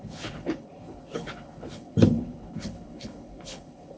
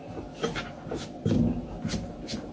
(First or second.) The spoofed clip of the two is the first